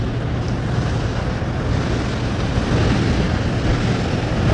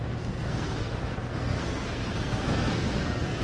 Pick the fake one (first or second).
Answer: second